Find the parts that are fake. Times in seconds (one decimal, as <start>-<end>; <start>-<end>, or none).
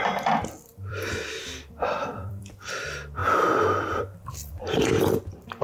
0.7-2.4; 3.2-4.5